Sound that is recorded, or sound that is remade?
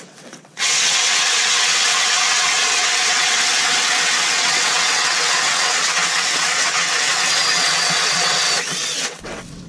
remade